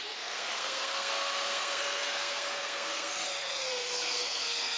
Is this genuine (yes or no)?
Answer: no